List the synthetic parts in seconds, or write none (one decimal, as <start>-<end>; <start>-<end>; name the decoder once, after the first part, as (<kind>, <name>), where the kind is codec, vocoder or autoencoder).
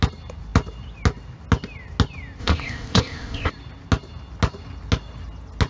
2.4-3.5 (codec, ZipCodec)